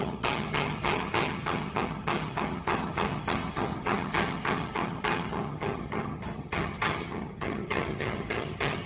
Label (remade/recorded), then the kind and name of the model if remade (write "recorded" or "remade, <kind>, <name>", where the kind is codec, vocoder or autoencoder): remade, vocoder, HiFi-GAN